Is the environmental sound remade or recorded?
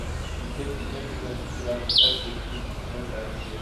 recorded